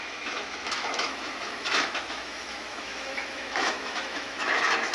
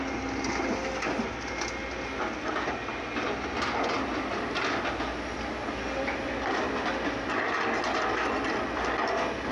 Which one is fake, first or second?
first